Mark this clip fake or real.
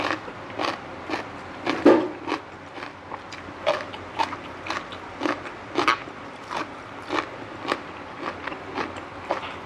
real